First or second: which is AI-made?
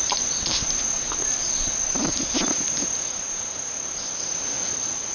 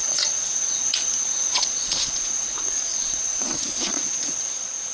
second